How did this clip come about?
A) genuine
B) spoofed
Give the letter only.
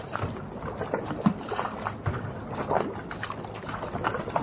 A